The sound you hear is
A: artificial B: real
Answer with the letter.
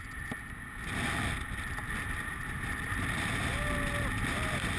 B